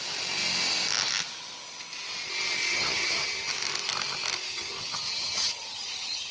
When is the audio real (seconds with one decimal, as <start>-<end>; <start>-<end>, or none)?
0.0-2.7; 3.5-4.5